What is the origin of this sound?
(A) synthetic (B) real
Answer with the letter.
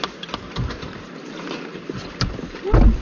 B